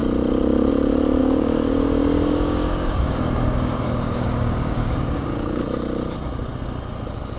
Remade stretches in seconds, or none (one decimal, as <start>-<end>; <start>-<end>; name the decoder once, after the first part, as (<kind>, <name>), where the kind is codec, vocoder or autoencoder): 1.2-5.6 (codec, DAC)